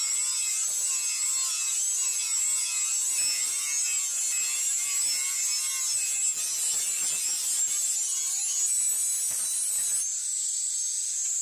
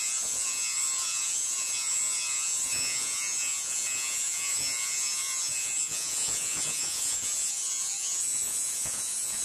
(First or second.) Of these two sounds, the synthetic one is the second